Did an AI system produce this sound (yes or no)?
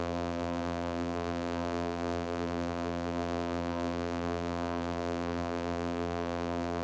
yes